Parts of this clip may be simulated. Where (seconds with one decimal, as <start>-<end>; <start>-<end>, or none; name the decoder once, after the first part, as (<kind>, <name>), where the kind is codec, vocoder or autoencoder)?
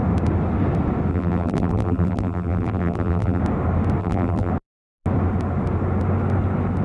1.1-3.4 (vocoder, BigVGAN v2); 4.0-4.5